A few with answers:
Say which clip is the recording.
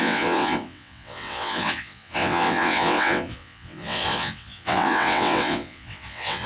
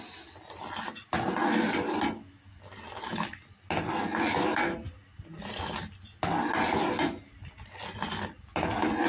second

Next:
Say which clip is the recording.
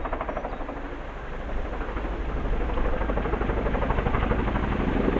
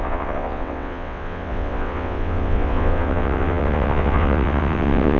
first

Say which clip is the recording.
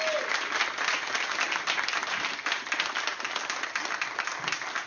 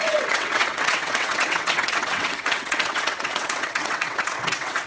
first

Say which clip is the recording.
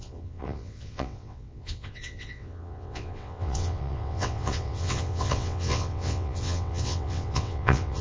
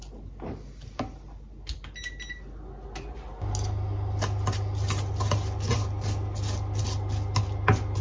second